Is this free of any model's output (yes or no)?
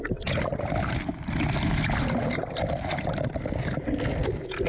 yes